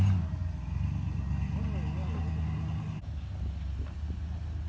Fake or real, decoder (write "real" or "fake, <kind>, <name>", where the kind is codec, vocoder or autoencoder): real